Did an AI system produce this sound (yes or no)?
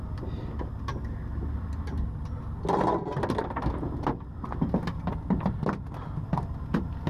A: no